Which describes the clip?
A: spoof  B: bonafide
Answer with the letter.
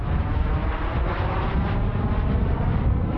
B